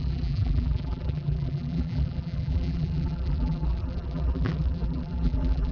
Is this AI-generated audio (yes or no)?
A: yes